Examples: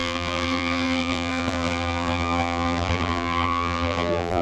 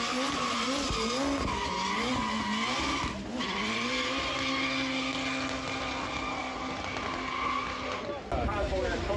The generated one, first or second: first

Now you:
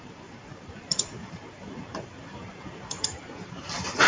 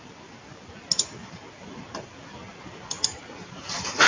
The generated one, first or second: first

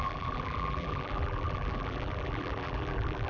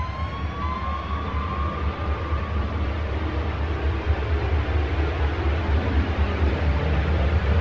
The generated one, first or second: first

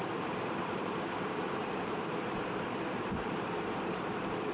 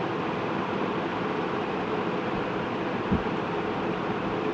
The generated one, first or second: first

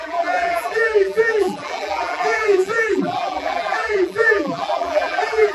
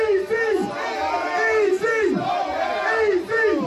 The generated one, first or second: first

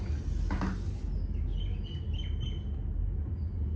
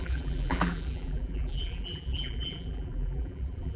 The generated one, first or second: second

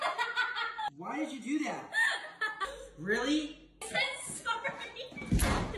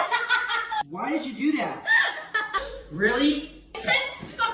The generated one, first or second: second